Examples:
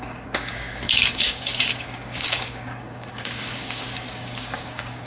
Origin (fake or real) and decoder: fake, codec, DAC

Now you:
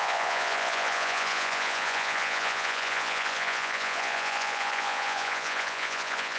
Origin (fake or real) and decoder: fake, vocoder, Vocos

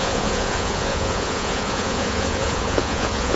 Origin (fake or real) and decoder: fake, vocoder, Vocos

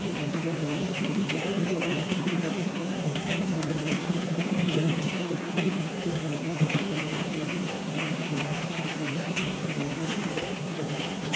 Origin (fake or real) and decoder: fake, codec, SNAC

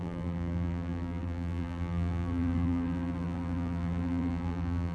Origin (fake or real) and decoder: fake, vocoder, BigVGAN v2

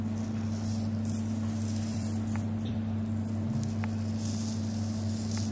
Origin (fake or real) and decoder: fake, vocoder, BigVGAN v2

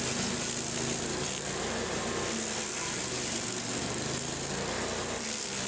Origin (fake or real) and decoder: real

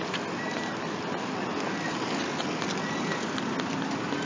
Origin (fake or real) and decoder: real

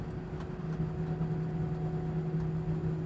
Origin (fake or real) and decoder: real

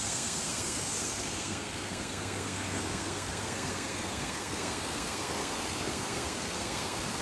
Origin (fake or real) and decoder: fake, codec, SNAC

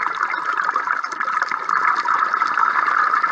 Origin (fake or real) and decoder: real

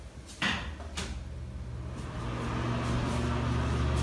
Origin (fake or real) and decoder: real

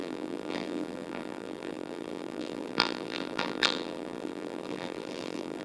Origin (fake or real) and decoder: fake, vocoder, BigVGAN v2